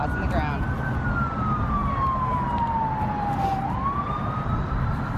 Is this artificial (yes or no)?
no